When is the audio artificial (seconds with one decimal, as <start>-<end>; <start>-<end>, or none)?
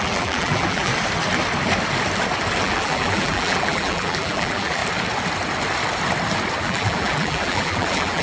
0.0-0.9; 2.6-4.8; 6.6-8.2